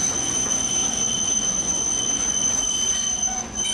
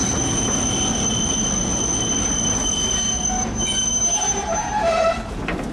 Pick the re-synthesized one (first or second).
first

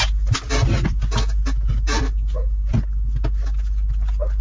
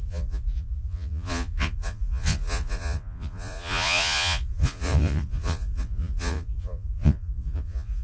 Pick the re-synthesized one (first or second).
second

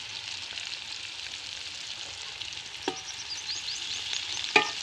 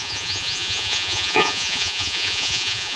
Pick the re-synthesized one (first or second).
second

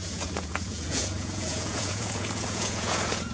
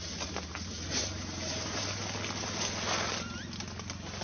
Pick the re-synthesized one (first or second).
first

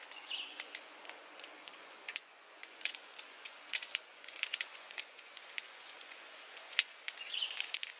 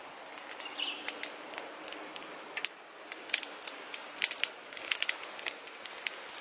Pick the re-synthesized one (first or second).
first